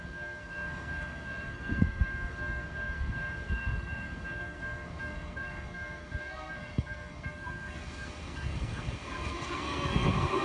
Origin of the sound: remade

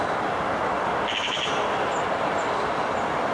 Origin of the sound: recorded